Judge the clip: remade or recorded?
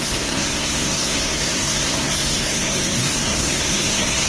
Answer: remade